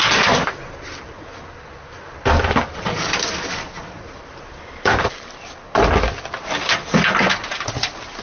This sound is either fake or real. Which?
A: real